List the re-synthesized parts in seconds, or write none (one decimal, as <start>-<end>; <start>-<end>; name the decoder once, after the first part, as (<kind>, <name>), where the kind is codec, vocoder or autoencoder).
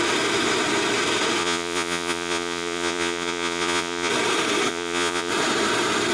1.4-4.1 (vocoder, Vocos); 4.7-5.3